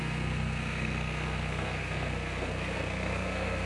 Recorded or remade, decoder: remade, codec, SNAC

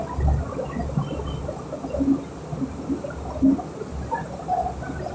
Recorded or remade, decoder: recorded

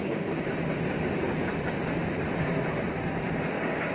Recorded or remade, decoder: recorded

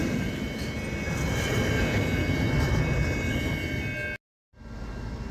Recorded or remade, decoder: recorded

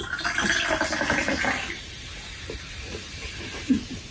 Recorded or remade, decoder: recorded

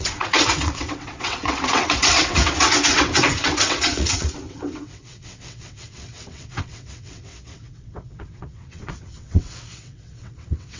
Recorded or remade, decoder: remade, vocoder, WaveNeXt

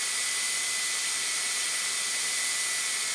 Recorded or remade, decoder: remade, vocoder, BigVGAN v2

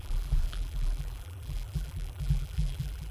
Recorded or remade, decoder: remade, vocoder, BigVGAN v2